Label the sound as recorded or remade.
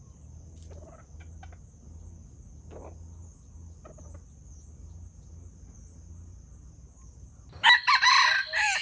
recorded